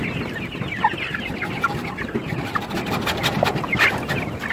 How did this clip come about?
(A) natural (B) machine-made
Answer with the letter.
A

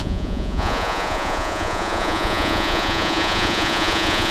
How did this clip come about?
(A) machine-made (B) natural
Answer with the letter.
A